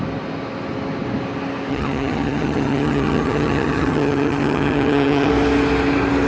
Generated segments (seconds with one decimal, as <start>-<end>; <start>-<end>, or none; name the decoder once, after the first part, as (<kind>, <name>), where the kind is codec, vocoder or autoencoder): 1.7-5.3 (vocoder, HiFi-GAN)